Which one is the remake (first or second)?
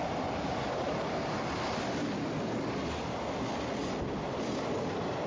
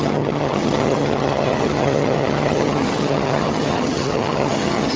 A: second